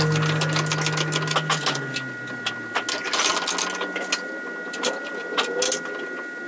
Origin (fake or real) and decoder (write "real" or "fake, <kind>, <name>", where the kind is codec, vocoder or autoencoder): real